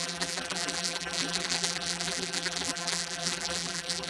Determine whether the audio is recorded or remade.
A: remade